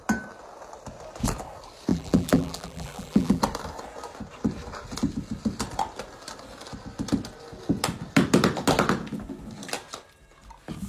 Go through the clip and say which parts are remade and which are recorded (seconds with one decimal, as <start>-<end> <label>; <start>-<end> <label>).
0.0-1.9 recorded; 1.9-3.4 remade; 3.4-10.9 recorded